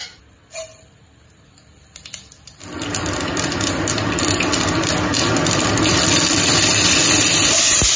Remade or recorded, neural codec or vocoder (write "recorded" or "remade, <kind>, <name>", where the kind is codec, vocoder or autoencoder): remade, vocoder, BigVGAN v2